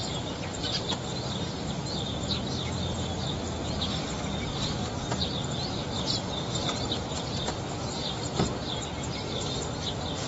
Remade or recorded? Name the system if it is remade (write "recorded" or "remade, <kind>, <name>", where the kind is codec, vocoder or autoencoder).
recorded